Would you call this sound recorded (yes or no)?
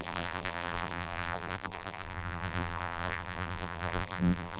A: no